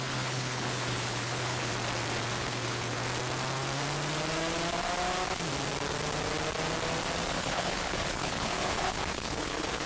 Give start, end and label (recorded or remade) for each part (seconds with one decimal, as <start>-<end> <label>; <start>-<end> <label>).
0.0-1.7 remade; 1.7-2.4 recorded; 2.4-3.0 remade; 3.0-7.3 recorded; 7.3-9.9 remade